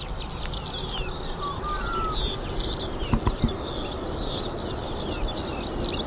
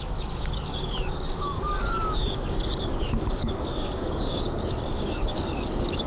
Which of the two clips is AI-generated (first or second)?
second